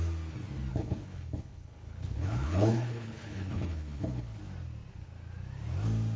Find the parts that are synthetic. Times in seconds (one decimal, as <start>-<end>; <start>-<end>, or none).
0.7-4.4